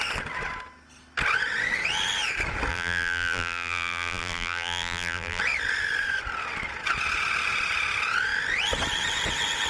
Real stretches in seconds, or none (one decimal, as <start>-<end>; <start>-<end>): 0.0-2.7; 5.4-9.7